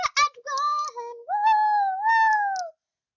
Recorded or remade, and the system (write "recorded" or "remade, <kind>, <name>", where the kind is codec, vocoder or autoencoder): recorded